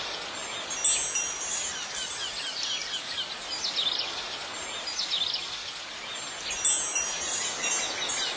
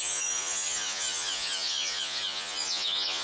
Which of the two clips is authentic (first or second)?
first